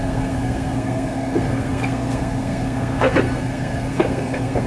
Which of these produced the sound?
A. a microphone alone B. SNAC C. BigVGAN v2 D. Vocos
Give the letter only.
B